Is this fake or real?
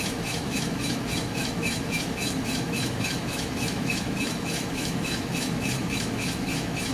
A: fake